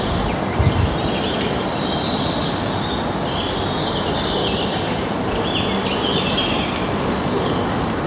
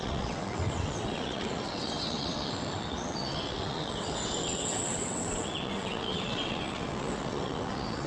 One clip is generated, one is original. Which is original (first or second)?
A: first